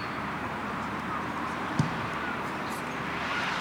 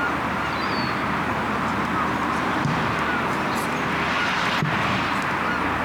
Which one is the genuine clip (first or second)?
second